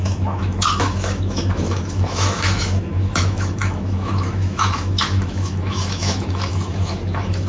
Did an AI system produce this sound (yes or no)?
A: yes